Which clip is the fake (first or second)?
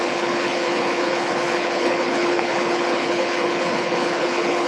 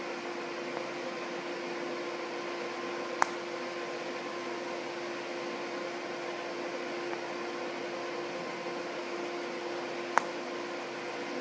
first